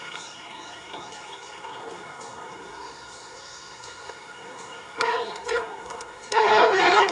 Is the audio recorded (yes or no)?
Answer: no